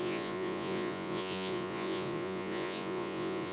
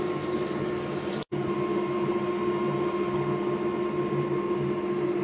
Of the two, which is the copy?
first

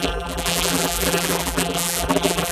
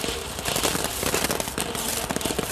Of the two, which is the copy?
first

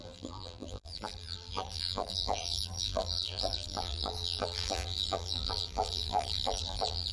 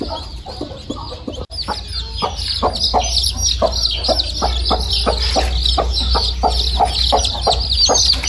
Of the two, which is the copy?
first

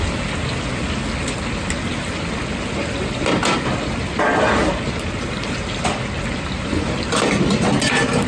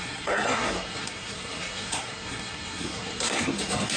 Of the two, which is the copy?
second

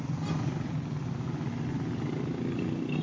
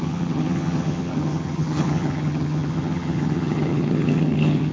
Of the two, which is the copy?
second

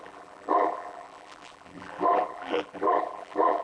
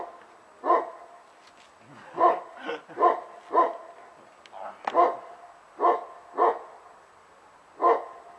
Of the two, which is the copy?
first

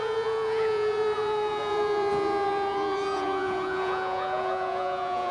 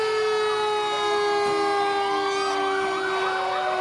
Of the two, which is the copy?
first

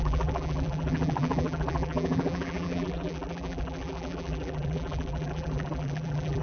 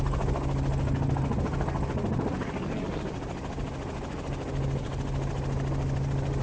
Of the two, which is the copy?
first